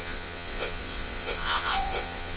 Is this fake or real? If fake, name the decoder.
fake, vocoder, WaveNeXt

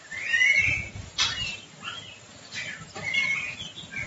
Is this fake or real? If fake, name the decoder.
real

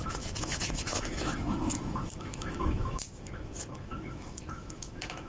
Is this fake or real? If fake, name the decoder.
fake, autoencoder, DAC-VAE